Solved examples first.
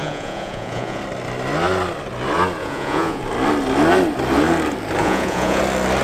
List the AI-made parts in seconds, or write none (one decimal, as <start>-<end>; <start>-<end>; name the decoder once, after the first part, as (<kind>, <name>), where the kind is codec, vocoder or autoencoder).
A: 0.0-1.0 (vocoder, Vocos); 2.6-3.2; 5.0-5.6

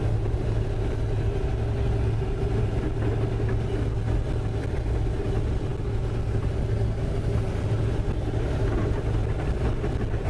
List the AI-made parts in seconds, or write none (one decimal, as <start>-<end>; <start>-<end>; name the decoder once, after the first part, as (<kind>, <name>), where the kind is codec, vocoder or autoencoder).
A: none

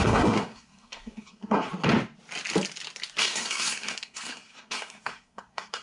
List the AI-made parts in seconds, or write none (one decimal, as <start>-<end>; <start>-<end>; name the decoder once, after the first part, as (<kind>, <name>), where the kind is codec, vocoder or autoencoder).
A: 0.0-1.7 (codec, SNAC); 3.2-5.8

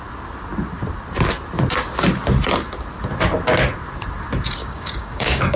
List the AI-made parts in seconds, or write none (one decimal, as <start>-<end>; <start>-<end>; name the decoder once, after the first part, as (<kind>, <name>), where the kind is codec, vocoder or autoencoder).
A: 4.6-5.6 (codec, DAC)

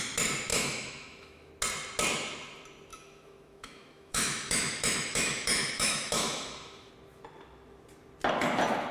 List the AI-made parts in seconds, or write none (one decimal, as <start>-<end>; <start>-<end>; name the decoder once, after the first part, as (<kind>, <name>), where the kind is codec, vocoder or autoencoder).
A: 0.5-1.5 (autoencoder, DAC-VAE); 2.9-6.9

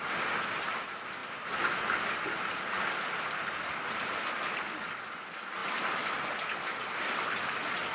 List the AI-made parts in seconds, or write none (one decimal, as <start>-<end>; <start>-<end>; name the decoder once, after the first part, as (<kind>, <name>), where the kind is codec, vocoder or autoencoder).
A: none